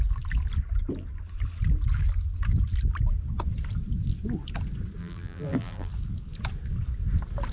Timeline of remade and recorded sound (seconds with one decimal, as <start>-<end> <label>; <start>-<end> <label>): 0.0-5.0 recorded; 5.0-5.9 remade; 5.9-7.5 recorded